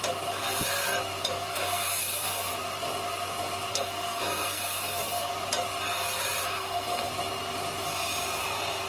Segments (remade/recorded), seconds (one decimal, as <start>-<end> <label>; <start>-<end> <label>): 0.0-1.5 recorded; 1.5-2.5 remade; 2.5-3.7 recorded; 3.7-5.3 remade; 5.3-6.4 recorded; 6.4-7.1 remade; 7.1-8.9 recorded